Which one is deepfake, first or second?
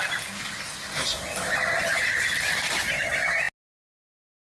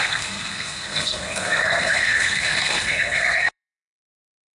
second